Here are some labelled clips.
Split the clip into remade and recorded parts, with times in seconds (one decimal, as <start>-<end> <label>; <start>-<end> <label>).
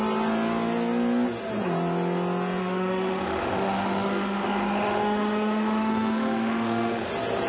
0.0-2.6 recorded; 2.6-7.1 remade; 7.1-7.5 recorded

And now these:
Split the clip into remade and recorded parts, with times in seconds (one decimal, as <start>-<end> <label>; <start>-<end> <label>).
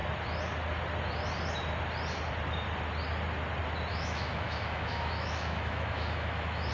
0.0-3.9 recorded; 3.9-6.7 remade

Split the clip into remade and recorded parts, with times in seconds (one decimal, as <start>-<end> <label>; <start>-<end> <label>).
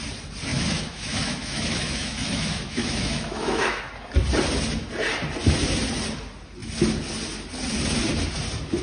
0.0-0.5 recorded; 0.5-3.8 remade; 3.8-8.8 recorded